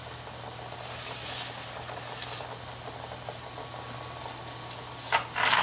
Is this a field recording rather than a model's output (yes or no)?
yes